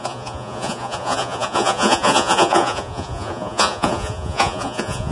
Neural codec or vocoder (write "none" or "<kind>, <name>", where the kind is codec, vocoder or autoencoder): vocoder, Vocos